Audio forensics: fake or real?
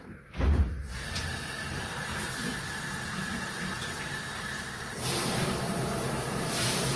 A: fake